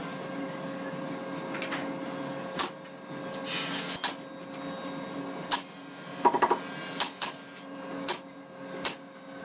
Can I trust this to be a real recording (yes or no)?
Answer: yes